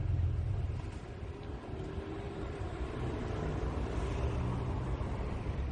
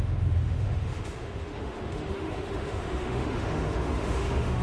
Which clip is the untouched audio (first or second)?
first